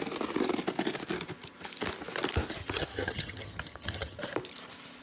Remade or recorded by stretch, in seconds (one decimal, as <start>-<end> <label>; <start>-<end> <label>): 0.0-2.6 recorded; 2.6-4.2 remade; 4.2-5.0 recorded